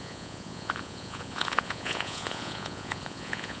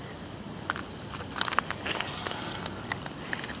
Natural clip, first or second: second